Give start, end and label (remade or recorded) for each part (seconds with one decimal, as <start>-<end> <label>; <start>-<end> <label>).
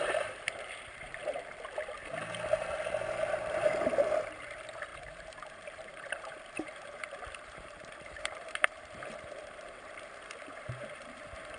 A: 0.0-1.2 remade; 1.2-3.9 recorded; 3.9-11.6 remade